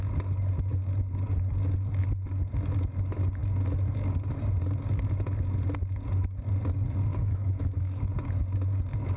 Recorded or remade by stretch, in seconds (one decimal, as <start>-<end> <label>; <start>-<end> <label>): 0.0-7.1 recorded; 7.1-8.1 remade; 8.1-9.2 recorded